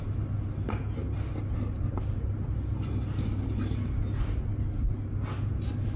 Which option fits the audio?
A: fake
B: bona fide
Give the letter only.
B